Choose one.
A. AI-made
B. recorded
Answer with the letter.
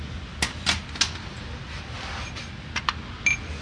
B